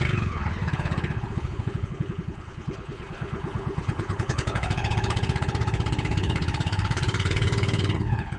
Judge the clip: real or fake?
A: fake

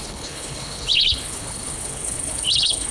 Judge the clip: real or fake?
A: fake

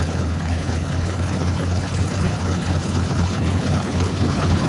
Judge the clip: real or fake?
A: fake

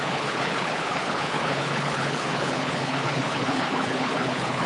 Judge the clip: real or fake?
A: fake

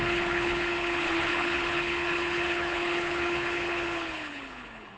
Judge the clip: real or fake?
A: fake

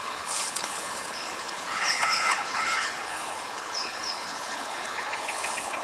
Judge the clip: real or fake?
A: fake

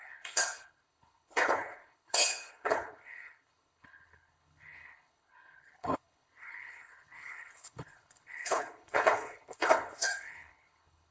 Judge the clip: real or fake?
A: fake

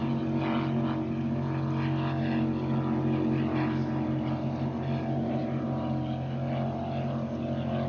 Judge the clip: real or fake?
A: real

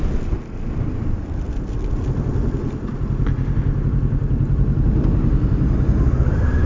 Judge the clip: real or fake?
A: real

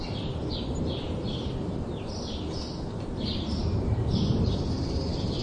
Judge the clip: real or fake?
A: real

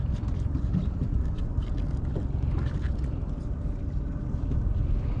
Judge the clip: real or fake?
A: real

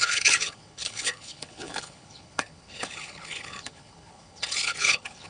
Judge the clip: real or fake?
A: fake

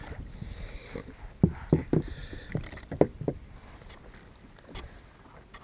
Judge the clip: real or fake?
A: real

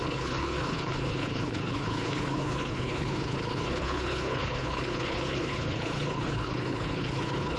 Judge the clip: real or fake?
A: fake